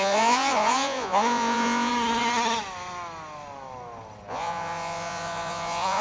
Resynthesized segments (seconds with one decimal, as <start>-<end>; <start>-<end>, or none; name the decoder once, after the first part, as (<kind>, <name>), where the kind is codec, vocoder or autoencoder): 0.0-1.9 (vocoder, Vocos); 4.3-6.0